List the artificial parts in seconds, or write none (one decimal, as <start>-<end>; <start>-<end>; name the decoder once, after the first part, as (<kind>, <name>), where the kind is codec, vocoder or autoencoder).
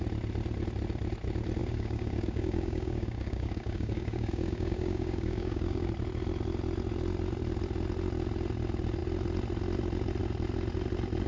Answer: 1.6-5.9 (codec, DAC)